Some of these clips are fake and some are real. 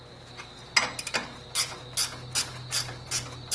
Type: real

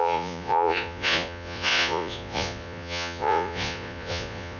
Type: fake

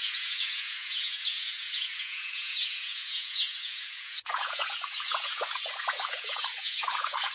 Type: fake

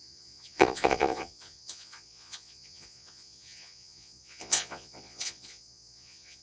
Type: fake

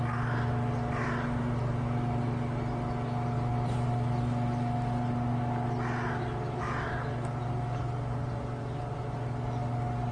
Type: real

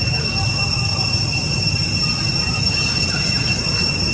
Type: real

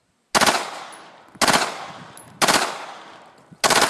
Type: real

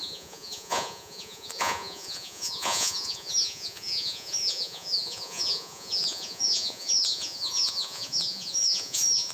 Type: fake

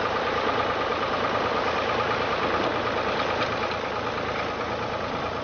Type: real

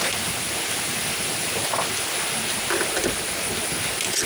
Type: real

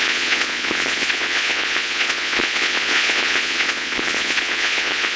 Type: fake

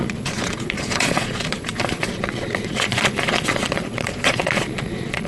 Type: fake